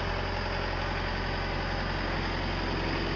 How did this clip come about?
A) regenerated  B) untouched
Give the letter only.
B